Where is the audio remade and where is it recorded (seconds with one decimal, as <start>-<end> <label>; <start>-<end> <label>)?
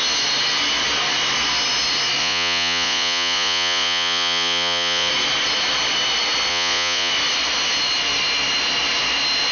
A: 0.0-2.2 recorded; 2.2-5.1 remade; 5.1-6.5 recorded; 6.5-7.1 remade; 7.1-9.5 recorded